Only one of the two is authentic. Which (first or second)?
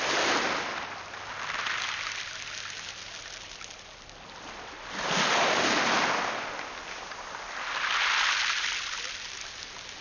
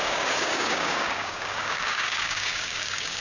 first